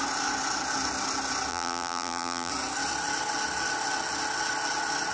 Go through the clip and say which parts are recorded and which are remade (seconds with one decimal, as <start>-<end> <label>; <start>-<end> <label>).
0.0-1.5 recorded; 1.5-2.5 remade; 2.5-5.1 recorded